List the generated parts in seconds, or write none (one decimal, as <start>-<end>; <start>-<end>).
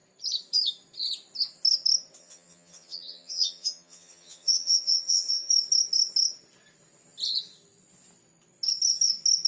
2.2-5.5